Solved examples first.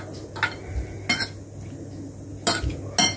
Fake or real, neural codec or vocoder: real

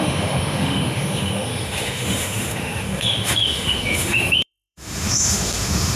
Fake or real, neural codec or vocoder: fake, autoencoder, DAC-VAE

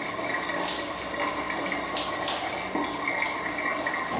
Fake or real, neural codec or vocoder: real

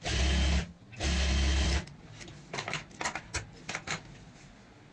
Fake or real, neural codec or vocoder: real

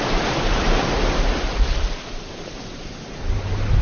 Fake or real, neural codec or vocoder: real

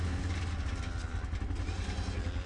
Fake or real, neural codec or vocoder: real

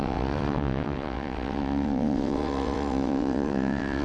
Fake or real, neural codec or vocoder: fake, vocoder, WaveNeXt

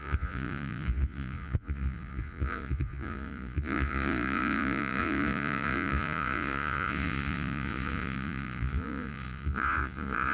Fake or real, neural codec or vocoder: fake, vocoder, Vocos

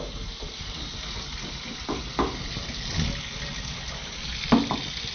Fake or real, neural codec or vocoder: real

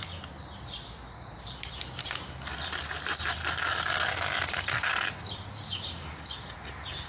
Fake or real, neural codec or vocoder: real